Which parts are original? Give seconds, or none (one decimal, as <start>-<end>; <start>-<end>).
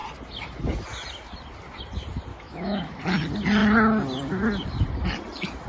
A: 0.0-2.3; 3.0-5.7